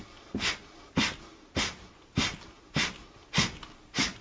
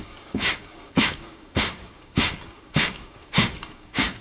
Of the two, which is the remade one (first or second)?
second